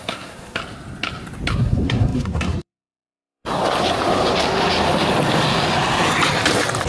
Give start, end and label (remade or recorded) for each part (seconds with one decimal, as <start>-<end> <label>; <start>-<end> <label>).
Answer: 0.0-0.6 remade; 0.6-1.5 recorded; 1.5-3.6 remade; 3.6-6.9 recorded